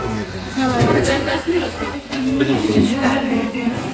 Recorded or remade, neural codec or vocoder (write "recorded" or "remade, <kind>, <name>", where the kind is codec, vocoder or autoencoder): remade, codec, SNAC